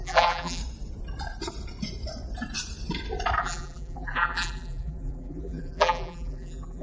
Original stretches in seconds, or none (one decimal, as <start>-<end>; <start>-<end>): 0.6-3.4